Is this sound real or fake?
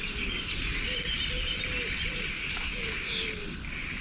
real